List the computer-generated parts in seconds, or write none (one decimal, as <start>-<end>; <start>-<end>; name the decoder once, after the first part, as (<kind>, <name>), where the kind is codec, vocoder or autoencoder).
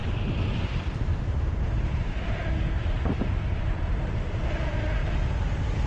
0.6-1.1 (vocoder, BigVGAN v2); 1.8-5.0